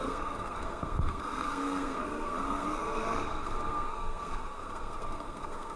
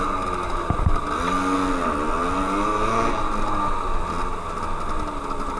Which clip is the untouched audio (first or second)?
second